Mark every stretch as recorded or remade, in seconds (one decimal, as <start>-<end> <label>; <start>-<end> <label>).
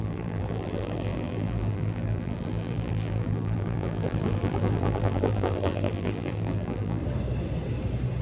0.0-7.0 remade; 7.0-8.2 recorded